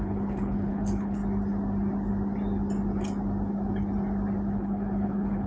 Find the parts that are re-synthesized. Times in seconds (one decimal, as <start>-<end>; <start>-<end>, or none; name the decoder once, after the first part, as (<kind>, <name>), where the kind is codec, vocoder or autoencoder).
0.0-1.2 (codec, HILCodec); 4.5-5.5